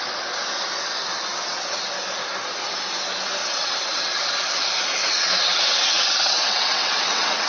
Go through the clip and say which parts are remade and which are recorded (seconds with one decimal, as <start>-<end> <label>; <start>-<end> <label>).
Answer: 0.0-1.3 recorded; 1.3-1.8 remade; 1.8-3.4 recorded; 3.4-4.2 remade; 4.2-5.0 recorded; 5.0-7.5 remade